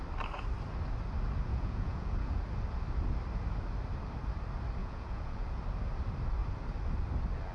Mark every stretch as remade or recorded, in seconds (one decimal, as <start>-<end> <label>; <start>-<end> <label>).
0.0-1.5 recorded; 1.5-2.4 remade; 2.4-4.8 recorded; 4.8-5.6 remade; 5.6-7.5 recorded